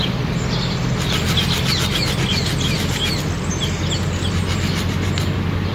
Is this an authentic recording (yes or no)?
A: yes